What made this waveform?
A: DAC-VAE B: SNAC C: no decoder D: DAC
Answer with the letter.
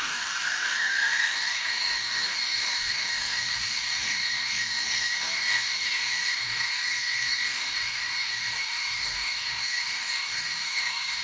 D